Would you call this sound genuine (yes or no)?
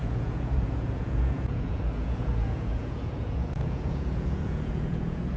no